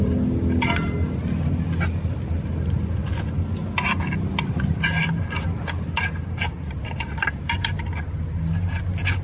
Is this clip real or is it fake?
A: real